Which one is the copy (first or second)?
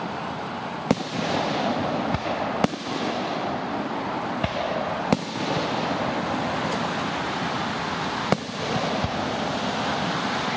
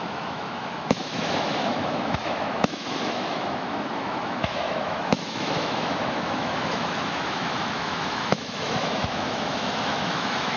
second